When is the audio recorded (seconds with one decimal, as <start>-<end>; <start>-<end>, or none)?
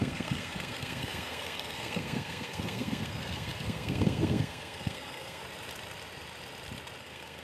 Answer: 5.4-7.0